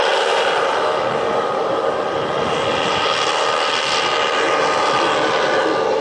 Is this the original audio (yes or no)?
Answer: yes